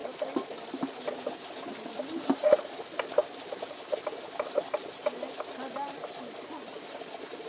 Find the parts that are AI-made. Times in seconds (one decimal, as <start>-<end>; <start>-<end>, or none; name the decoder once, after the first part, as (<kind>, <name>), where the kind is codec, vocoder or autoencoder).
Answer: none